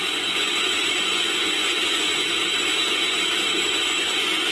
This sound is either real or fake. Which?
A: fake